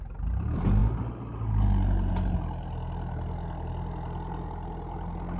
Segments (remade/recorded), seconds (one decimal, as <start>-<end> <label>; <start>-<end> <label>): 0.0-5.4 recorded